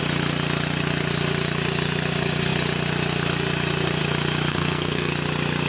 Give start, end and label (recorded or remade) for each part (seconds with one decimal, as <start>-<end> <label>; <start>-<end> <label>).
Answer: 0.0-4.5 recorded; 4.5-5.1 remade; 5.1-5.7 recorded